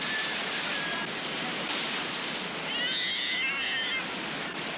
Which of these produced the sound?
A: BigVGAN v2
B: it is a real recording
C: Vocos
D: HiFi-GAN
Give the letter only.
B